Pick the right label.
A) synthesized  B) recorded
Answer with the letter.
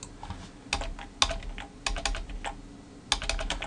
B